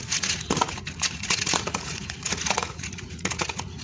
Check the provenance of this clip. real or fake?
fake